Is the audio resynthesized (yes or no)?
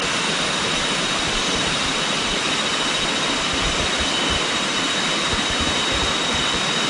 no